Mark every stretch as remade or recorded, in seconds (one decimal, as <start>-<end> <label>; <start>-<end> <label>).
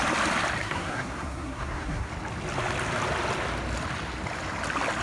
0.0-0.6 recorded; 0.6-2.1 remade; 2.1-5.0 recorded